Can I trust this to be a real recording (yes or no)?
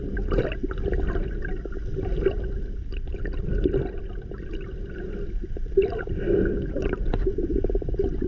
yes